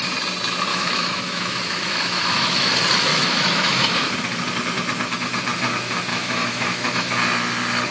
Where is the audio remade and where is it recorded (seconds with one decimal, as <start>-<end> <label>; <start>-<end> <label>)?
0.0-0.7 recorded; 0.7-2.7 remade; 2.7-3.1 recorded; 3.1-4.1 remade; 4.1-6.1 recorded; 6.1-7.1 remade; 7.1-7.9 recorded